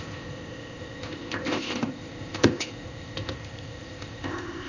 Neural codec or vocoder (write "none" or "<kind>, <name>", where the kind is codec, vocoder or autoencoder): codec, ZipCodec